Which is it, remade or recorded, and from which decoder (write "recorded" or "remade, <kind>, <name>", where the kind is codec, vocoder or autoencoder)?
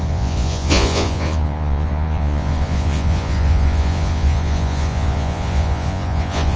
remade, vocoder, Vocos